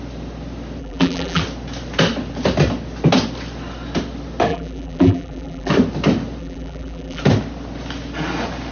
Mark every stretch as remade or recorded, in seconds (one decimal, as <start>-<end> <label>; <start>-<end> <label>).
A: 0.0-0.8 recorded; 0.8-1.4 remade; 1.4-4.5 recorded; 4.5-5.7 remade; 5.7-6.4 recorded; 6.4-7.2 remade; 7.2-8.7 recorded